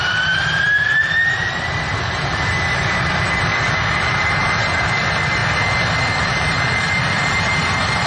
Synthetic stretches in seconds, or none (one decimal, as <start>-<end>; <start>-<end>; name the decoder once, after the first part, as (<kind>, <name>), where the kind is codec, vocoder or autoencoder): 0.0-5.4 (vocoder, BigVGAN v2); 6.1-8.1